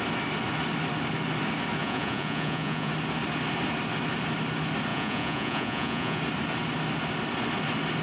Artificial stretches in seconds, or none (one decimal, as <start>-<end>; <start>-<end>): 1.8-2.9; 4.9-6.2